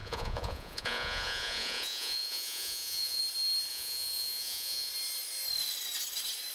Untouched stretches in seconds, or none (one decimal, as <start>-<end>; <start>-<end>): 3.2-3.7; 4.9-6.5